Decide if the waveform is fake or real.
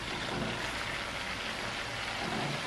real